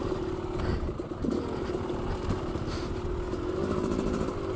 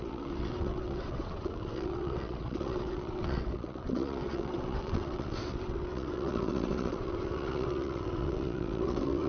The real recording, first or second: first